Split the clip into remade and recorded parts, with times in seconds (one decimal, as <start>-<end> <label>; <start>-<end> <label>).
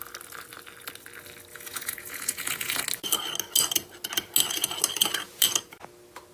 0.0-1.5 recorded; 1.5-2.8 remade; 2.8-6.3 recorded